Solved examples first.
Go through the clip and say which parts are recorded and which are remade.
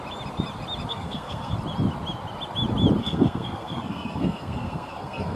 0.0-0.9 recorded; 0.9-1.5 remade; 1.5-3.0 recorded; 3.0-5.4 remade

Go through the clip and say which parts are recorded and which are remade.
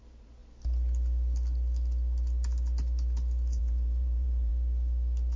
0.0-0.4 remade; 0.4-3.6 recorded; 3.6-4.5 remade; 4.5-5.4 recorded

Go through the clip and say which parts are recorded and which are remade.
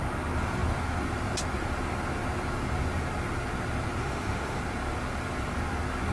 0.0-4.0 recorded; 4.0-4.6 remade; 4.6-6.1 recorded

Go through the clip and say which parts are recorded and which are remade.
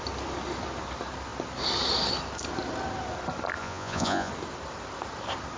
0.0-3.6 recorded; 3.6-4.3 remade; 4.3-5.6 recorded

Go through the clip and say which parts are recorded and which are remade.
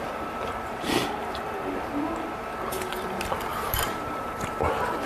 0.0-1.2 recorded; 1.2-1.9 remade; 1.9-3.5 recorded; 3.5-4.6 remade; 4.6-5.1 recorded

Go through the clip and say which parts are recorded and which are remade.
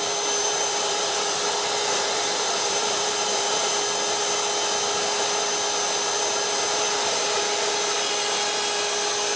0.0-0.4 recorded; 0.4-3.7 remade; 3.7-6.7 recorded; 6.7-7.4 remade; 7.4-9.4 recorded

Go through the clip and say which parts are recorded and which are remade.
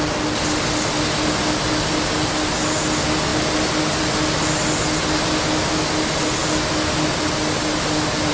0.0-8.3 recorded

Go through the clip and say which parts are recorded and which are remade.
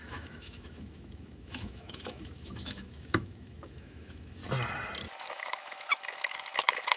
0.0-4.4 remade; 4.4-5.2 recorded; 5.2-7.0 remade